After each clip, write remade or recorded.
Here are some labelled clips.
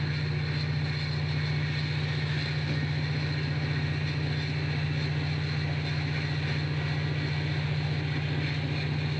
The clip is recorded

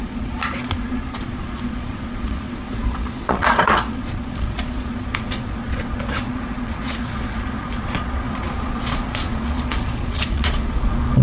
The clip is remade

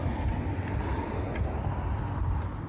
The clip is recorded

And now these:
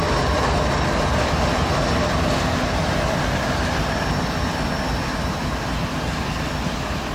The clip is recorded